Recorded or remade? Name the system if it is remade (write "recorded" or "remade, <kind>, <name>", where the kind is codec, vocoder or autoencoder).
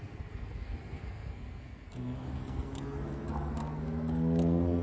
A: remade, codec, SNAC